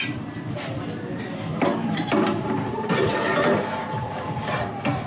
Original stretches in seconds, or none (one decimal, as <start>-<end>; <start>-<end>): 0.0-1.5; 4.6-5.1